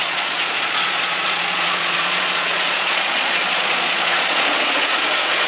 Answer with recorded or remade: remade